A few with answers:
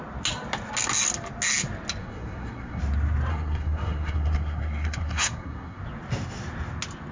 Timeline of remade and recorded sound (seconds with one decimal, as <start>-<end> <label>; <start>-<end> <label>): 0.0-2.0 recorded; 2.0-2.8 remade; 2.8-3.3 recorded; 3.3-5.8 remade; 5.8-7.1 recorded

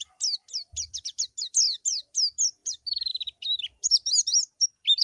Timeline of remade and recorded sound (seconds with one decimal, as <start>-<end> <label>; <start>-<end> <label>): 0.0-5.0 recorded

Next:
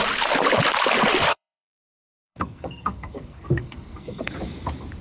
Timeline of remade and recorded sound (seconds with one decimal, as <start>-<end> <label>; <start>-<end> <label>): 0.0-1.3 recorded; 1.3-4.3 remade; 4.3-5.0 recorded